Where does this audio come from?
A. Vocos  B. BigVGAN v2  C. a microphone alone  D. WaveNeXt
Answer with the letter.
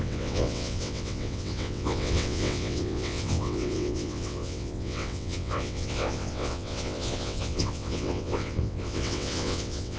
D